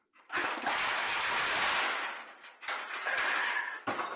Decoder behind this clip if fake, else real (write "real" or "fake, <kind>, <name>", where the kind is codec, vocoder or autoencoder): real